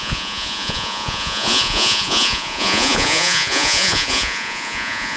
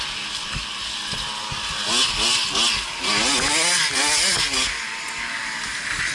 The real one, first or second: second